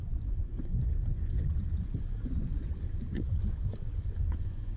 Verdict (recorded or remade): remade